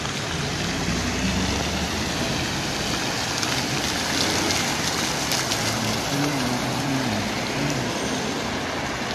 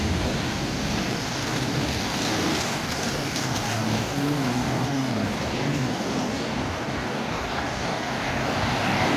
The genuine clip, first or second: first